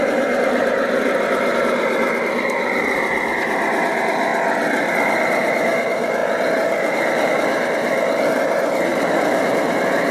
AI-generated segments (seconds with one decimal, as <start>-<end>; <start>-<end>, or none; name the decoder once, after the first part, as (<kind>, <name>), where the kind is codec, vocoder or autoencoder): 0.0-4.3 (vocoder, BigVGAN v2); 4.9-10.1

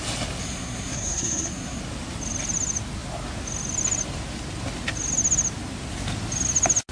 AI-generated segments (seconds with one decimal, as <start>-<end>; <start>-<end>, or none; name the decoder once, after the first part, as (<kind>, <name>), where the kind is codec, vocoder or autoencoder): 0.4-1.8 (codec, SNAC)

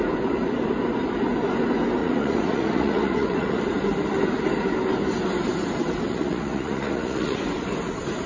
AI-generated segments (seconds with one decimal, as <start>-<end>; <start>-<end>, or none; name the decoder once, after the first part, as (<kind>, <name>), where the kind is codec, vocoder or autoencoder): 2.0-3.6 (vocoder, Vocos); 6.1-7.4